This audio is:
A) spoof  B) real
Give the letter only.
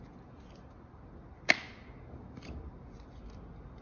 B